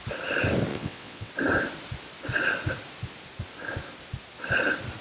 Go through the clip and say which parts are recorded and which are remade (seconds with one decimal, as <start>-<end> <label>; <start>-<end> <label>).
0.0-0.7 recorded; 0.7-1.3 remade; 1.3-5.0 recorded